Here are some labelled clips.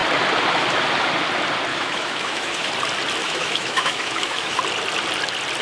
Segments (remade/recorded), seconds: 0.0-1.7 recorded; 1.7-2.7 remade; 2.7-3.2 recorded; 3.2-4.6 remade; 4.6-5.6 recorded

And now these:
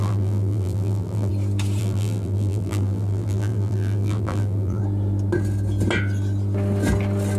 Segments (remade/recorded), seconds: 0.0-1.3 remade; 1.3-1.8 recorded; 1.8-4.8 remade; 4.8-7.4 recorded

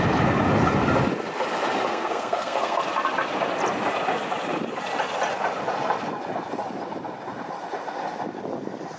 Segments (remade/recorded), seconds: 0.0-1.9 recorded; 1.9-2.8 remade; 2.8-9.0 recorded

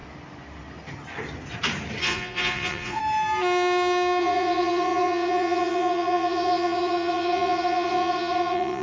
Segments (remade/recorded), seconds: 0.0-2.0 recorded; 2.0-3.0 remade; 3.0-4.2 recorded; 4.2-8.8 remade